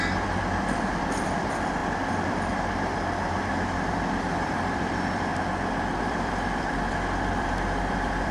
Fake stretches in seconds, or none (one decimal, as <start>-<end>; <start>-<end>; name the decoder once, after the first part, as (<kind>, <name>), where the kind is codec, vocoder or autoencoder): 0.0-1.8 (vocoder, BigVGAN v2); 2.3-5.3; 6.0-8.3